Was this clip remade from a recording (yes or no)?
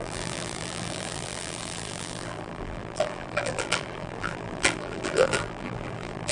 yes